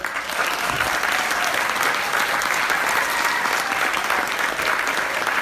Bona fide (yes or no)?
yes